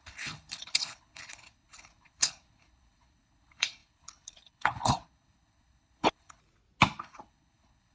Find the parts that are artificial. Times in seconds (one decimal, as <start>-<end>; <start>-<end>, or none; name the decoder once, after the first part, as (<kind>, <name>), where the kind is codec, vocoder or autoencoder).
0.0-6.4 (codec, HILCodec); 7.0-7.9